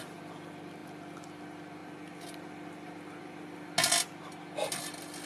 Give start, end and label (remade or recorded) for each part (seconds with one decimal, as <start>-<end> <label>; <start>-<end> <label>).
0.0-5.3 recorded